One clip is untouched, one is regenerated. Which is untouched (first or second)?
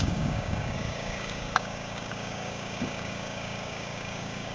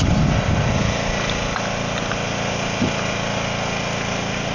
second